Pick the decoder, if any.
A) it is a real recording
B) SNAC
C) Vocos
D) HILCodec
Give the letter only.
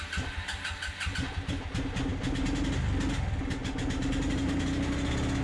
A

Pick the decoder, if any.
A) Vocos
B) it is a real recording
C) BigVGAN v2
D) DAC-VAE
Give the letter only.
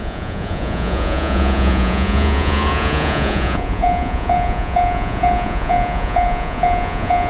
A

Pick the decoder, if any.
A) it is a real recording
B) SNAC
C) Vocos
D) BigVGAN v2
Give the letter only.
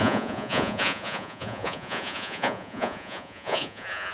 C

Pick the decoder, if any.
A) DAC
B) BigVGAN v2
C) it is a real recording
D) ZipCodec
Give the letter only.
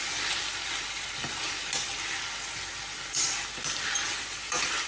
C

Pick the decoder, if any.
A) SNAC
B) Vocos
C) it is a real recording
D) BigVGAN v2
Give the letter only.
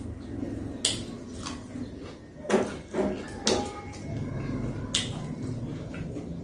C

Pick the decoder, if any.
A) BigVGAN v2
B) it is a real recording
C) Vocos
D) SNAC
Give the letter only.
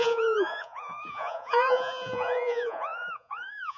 C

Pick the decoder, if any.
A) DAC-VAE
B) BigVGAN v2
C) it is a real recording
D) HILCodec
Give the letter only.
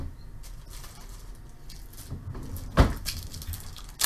C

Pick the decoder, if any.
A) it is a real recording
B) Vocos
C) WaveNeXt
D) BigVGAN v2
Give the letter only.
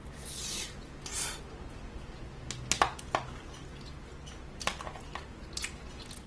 A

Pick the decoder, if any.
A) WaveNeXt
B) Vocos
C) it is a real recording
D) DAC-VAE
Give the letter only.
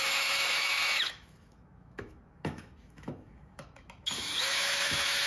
D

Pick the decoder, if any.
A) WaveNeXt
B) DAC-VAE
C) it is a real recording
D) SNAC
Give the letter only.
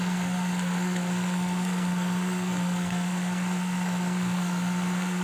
D